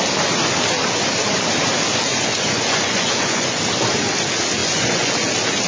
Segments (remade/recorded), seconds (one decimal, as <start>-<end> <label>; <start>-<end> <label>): 0.0-2.1 recorded; 2.1-3.6 remade; 3.6-4.6 recorded; 4.6-5.1 remade; 5.1-5.7 recorded